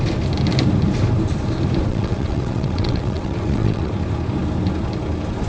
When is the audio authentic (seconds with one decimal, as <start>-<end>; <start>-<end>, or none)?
0.0-1.9; 3.9-5.5

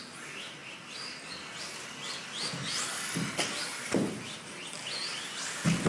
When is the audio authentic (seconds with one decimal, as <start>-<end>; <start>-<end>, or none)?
0.0-5.9

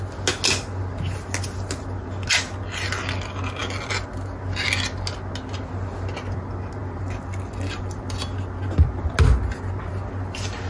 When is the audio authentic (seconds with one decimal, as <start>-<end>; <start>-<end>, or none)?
0.0-10.7